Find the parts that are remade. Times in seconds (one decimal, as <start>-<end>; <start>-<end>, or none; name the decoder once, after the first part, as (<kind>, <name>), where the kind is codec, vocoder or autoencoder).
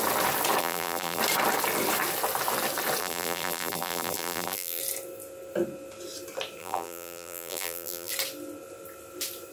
0.6-1.2 (vocoder, BigVGAN v2); 3.0-4.8; 6.6-8.1